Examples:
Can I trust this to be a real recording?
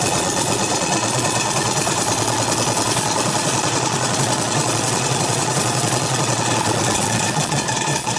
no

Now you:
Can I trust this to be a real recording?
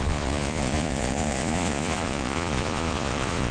no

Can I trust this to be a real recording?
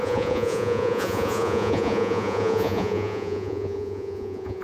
no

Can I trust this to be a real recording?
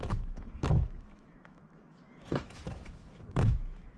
no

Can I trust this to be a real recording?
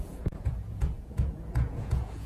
no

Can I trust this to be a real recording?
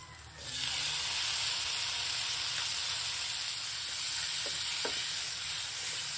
yes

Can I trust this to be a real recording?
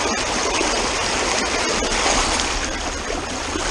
yes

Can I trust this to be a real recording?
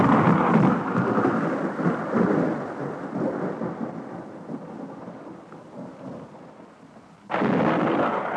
yes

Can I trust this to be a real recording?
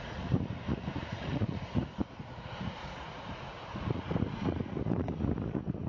no